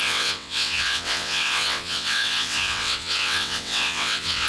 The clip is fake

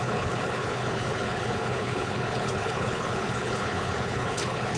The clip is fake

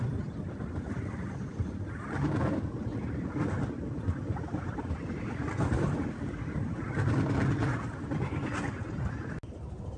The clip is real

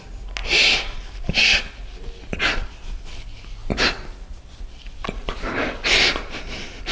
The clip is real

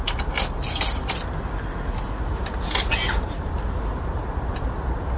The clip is real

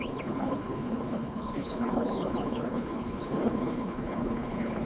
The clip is fake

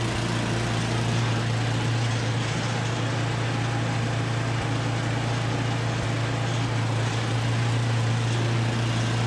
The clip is real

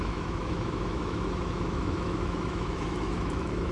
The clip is fake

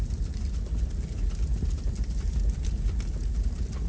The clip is real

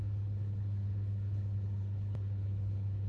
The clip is fake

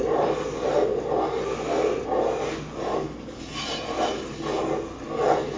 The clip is real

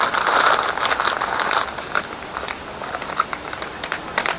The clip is real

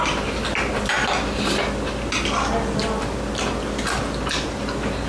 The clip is real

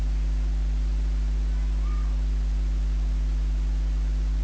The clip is real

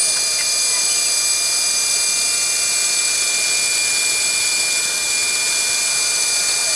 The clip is real